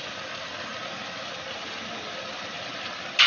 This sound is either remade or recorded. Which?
recorded